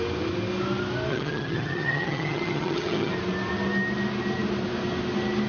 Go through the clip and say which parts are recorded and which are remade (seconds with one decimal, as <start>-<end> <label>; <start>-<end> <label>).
0.0-1.1 recorded; 1.1-3.1 remade; 3.1-5.5 recorded